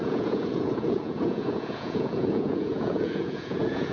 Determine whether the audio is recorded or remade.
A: remade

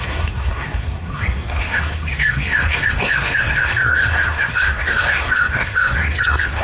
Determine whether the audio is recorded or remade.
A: remade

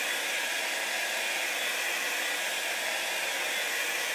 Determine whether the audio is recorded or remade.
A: recorded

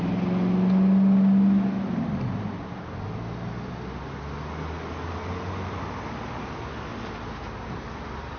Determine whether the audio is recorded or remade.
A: recorded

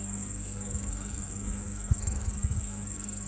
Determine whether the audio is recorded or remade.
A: remade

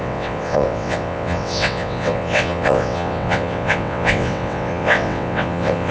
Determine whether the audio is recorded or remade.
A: remade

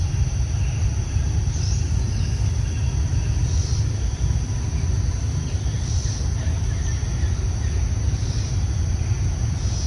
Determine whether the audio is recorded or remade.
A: recorded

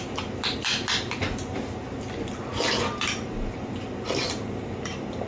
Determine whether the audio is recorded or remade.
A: recorded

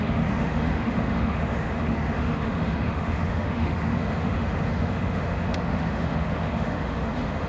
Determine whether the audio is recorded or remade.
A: remade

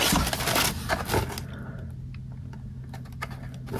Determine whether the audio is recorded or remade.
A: recorded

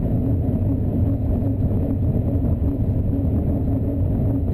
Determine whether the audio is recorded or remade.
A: remade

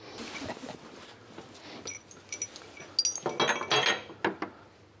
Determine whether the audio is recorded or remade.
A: recorded